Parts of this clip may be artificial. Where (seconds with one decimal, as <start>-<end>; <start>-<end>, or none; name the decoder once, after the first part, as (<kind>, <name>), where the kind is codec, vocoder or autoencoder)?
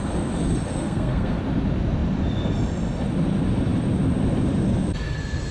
0.7-1.4 (codec, SNAC)